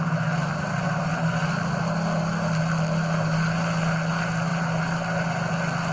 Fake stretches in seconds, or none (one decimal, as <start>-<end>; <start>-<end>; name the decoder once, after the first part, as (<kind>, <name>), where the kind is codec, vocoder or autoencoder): none